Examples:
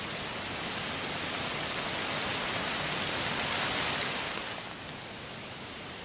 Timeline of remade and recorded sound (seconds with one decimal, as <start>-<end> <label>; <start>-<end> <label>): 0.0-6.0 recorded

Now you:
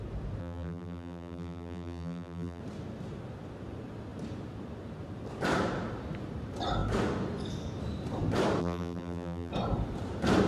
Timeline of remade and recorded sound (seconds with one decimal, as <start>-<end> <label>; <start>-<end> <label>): 0.0-0.4 recorded; 0.4-2.6 remade; 2.6-8.6 recorded; 8.6-9.5 remade; 9.5-10.5 recorded

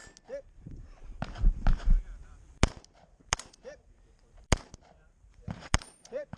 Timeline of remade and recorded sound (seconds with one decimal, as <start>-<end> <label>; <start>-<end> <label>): 0.0-0.7 recorded; 0.7-6.4 remade